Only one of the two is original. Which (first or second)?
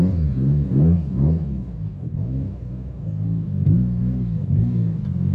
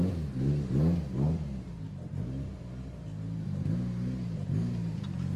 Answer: second